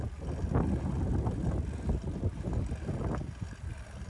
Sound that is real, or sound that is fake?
real